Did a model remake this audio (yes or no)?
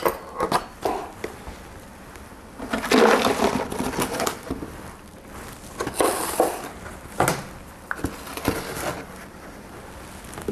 no